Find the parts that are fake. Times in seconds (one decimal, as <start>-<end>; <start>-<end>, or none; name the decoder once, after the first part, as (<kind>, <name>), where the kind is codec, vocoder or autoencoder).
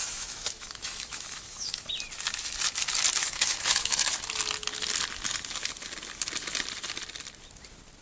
0.0-1.9 (autoencoder, DAC-VAE); 3.2-4.1